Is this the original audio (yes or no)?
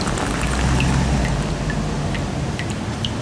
yes